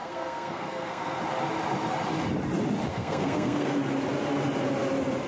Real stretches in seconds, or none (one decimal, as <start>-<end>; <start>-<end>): 1.2-2.9; 3.8-5.3

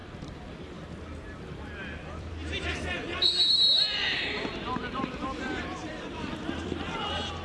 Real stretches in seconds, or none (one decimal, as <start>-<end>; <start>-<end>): 0.0-1.6; 2.3-3.1

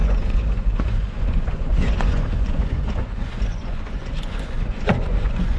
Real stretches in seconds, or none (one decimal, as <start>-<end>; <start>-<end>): none